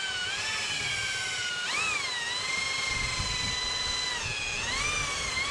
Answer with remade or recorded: recorded